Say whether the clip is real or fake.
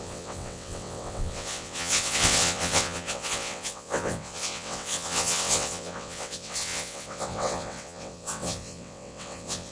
fake